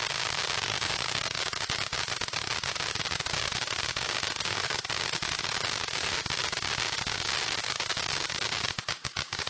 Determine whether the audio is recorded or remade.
remade